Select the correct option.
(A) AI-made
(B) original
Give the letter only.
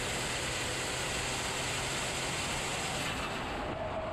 B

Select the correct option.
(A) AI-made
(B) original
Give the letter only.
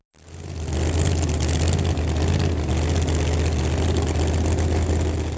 B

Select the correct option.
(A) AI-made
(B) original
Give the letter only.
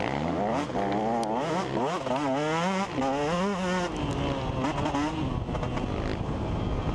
B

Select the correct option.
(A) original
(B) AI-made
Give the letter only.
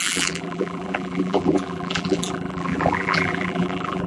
B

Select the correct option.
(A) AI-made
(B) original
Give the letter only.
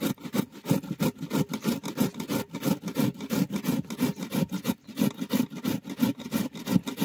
B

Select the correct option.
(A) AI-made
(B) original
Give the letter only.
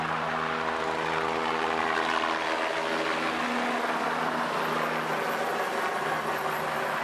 B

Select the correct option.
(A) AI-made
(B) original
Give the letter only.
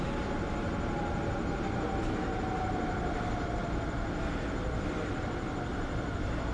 B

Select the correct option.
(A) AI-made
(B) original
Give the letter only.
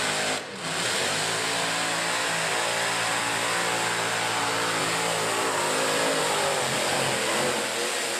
B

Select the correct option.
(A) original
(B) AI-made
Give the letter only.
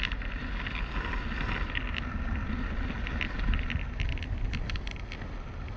A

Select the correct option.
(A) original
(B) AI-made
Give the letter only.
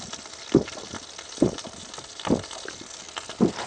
A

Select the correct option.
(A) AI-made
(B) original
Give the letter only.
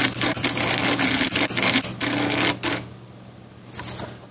B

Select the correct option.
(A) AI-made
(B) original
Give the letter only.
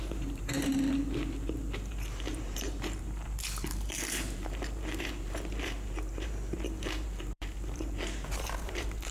A